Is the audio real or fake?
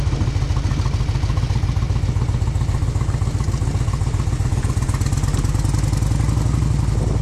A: real